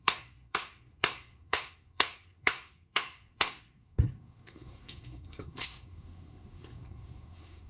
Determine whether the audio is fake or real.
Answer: fake